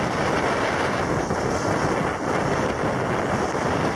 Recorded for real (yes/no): yes